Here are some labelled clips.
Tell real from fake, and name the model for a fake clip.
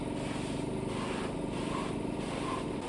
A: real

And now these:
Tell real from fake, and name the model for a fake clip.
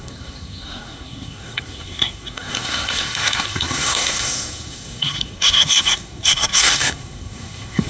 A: fake, codec, SNAC